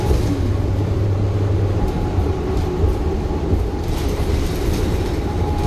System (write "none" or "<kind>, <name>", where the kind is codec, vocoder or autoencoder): vocoder, BigVGAN v2